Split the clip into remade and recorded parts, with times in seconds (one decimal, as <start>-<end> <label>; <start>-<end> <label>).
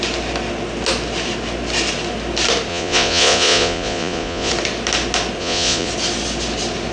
0.0-2.7 recorded; 2.7-4.5 remade; 4.5-5.4 recorded; 5.4-5.9 remade; 5.9-6.9 recorded